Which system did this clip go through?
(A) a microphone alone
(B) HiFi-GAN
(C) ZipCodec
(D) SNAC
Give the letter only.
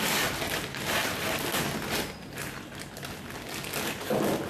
A